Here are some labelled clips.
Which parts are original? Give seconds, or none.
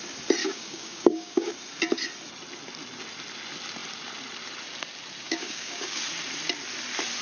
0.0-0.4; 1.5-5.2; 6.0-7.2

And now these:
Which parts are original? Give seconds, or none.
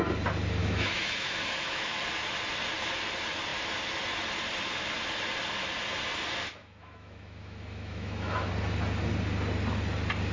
0.0-0.6; 2.0-6.6; 8.5-10.3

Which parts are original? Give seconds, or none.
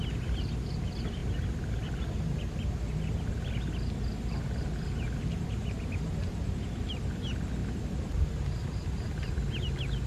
0.0-7.6; 9.1-10.1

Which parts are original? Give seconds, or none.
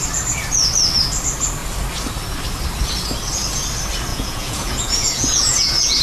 0.0-4.1